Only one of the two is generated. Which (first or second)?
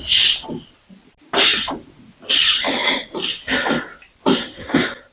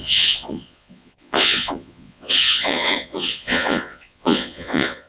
second